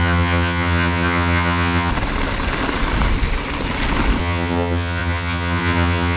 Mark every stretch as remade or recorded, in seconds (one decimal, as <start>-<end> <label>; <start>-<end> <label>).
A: 0.0-1.9 remade; 1.9-4.2 recorded; 4.2-6.2 remade